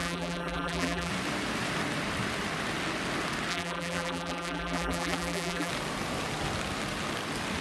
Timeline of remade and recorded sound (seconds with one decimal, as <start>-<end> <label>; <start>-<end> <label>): 0.0-1.1 remade; 1.1-3.5 recorded; 3.5-5.7 remade; 5.7-7.6 recorded